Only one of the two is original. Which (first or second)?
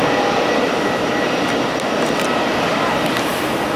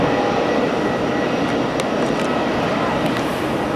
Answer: second